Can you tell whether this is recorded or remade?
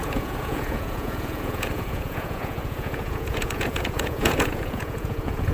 remade